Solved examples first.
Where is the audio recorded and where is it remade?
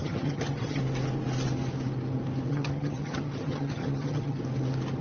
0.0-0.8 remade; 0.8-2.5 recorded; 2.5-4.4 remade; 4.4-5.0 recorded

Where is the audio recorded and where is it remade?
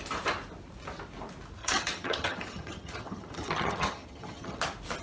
0.0-1.6 recorded; 1.6-4.6 remade; 4.6-5.0 recorded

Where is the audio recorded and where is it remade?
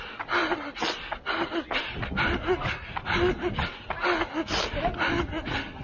0.0-5.8 recorded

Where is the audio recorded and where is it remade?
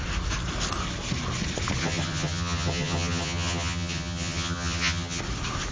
0.0-1.8 recorded; 1.8-5.2 remade; 5.2-5.7 recorded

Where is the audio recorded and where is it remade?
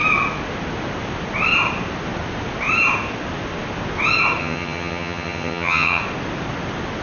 0.0-4.4 recorded; 4.4-6.0 remade; 6.0-7.0 recorded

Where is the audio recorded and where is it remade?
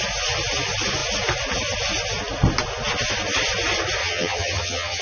0.0-4.0 recorded; 4.0-5.0 remade